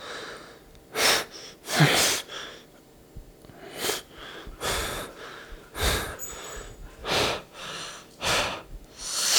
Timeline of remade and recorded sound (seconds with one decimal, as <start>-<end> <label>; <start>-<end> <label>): 0.0-7.0 recorded; 7.0-8.3 remade; 8.3-9.4 recorded